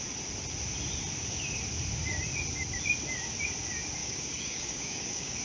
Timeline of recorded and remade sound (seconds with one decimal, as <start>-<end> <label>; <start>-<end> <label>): 0.0-4.0 recorded; 4.0-5.4 remade